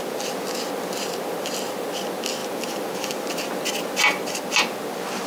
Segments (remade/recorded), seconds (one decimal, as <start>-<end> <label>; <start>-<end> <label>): 0.0-5.3 recorded